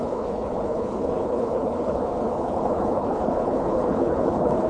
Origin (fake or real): fake